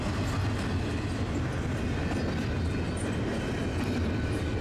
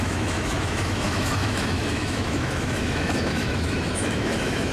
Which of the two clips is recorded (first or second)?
first